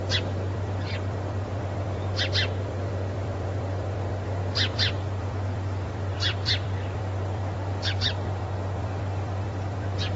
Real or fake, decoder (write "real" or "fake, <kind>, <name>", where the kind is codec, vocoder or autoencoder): fake, vocoder, BigVGAN v2